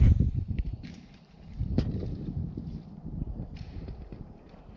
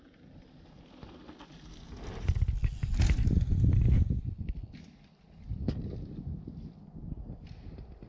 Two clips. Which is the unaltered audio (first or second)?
second